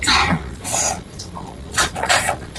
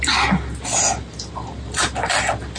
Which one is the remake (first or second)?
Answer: first